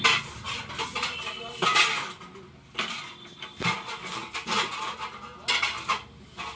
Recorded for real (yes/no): yes